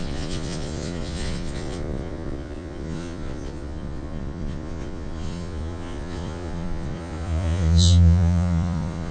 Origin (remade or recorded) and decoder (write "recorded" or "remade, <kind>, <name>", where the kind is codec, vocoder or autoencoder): remade, vocoder, Vocos